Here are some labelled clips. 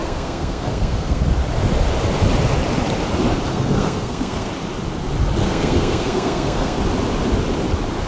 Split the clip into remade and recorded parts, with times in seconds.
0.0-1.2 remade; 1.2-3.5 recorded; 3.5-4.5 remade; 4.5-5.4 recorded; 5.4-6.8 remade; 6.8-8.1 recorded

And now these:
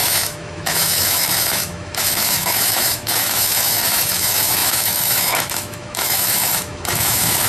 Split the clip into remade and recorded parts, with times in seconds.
0.0-7.5 remade

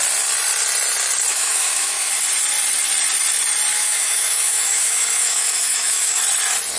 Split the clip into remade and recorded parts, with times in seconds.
0.0-1.3 recorded; 1.3-2.1 remade; 2.1-3.7 recorded; 3.7-6.2 remade; 6.2-6.8 recorded

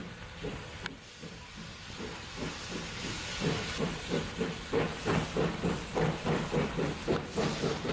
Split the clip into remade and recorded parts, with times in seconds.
0.0-7.9 recorded

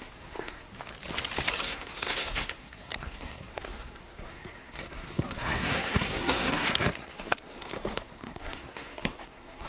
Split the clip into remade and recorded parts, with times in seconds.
0.0-0.7 remade; 0.7-1.6 recorded; 1.6-9.7 remade